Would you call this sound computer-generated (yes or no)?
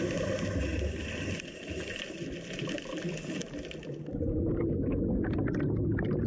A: no